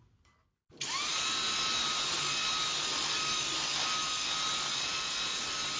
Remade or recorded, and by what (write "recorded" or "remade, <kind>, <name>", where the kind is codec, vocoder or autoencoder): recorded